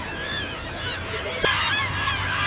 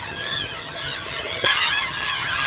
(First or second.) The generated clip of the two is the second